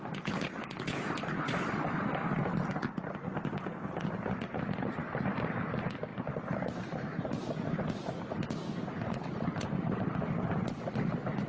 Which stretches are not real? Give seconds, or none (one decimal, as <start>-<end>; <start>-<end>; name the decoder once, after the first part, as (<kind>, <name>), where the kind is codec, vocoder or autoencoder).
6.1-7.5 (vocoder, BigVGAN v2)